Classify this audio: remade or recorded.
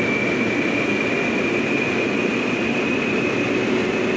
recorded